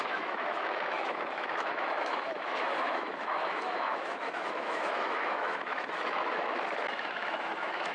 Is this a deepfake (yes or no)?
yes